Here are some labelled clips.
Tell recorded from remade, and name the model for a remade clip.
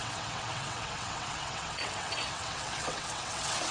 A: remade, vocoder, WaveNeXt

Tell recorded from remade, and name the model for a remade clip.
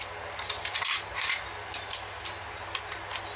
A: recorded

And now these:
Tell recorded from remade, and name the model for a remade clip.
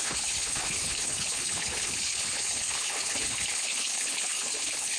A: remade, codec, HILCodec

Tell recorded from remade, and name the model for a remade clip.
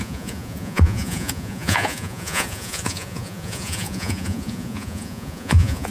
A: remade, vocoder, Vocos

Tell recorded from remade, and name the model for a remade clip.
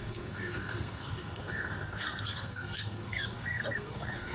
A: remade, codec, SNAC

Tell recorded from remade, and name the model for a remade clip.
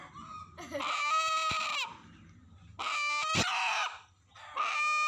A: recorded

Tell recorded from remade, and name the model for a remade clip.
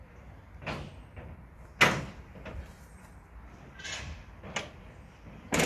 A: recorded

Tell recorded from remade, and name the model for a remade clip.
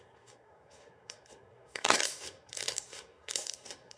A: remade, codec, SNAC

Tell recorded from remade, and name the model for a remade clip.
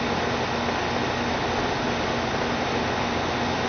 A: recorded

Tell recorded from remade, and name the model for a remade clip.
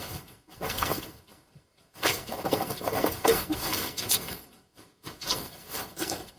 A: remade, codec, SNAC